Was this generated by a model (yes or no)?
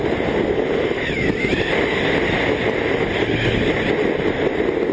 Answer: no